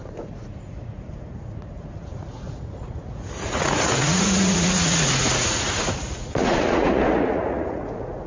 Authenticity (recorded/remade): remade